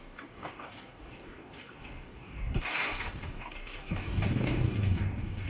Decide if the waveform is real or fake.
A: fake